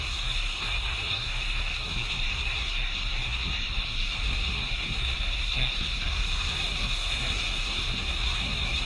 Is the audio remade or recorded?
remade